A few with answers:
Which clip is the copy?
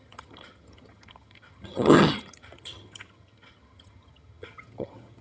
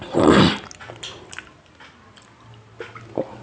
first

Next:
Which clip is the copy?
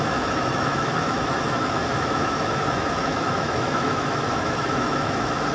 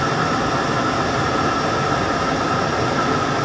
first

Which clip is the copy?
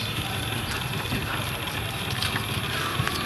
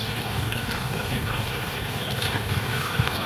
second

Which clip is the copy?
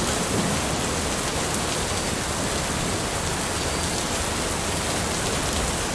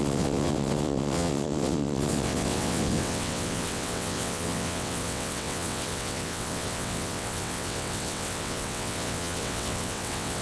second